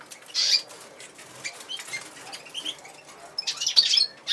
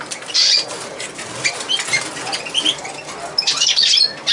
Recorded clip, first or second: first